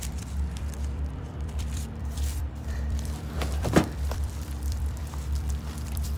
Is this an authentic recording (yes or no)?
no